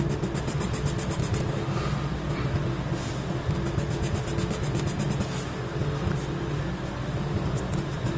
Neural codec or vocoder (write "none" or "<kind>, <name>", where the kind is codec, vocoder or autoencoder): none